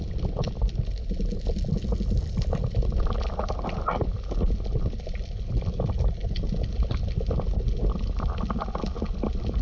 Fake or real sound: real